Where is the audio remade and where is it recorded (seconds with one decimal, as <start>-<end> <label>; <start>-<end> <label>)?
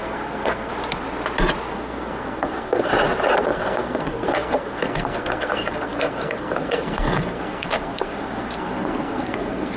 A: 0.0-0.7 remade; 0.7-1.7 recorded; 1.7-2.9 remade; 2.9-3.4 recorded; 3.4-9.8 remade